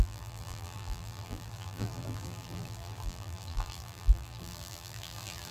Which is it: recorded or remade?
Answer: remade